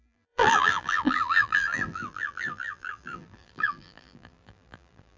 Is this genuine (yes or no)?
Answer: no